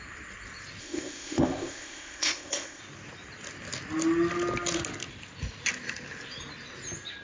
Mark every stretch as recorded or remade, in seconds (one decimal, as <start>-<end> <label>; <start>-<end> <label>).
0.0-0.8 recorded; 0.8-2.8 remade; 2.8-7.2 recorded